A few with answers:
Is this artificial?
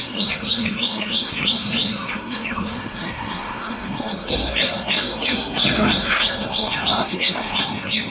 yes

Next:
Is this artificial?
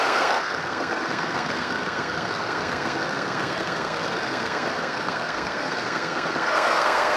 yes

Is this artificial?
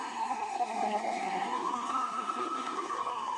yes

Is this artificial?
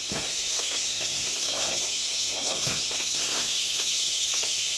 yes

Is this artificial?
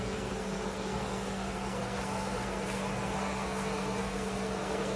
yes